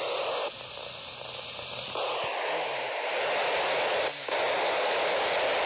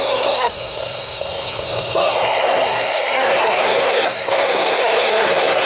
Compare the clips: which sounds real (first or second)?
first